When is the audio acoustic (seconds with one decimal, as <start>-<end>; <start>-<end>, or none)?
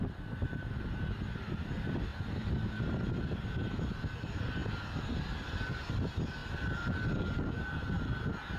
0.0-2.1; 3.1-8.6